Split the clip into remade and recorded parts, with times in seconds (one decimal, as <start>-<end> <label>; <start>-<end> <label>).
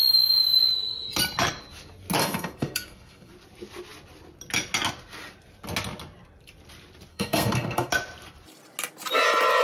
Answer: 0.0-2.2 recorded; 2.2-3.3 remade; 3.3-7.1 recorded; 7.1-7.9 remade; 7.9-9.6 recorded